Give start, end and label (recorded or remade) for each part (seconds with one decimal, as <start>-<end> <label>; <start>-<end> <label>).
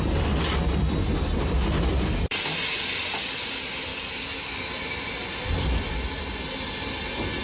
0.0-7.4 recorded